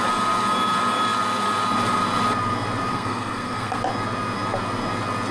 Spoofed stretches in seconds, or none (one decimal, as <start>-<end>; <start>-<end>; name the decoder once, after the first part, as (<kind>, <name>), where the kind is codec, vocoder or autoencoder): 2.9-3.8 (codec, SNAC)